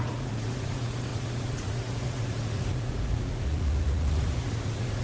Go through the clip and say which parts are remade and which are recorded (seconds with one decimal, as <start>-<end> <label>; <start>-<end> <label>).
0.0-5.0 remade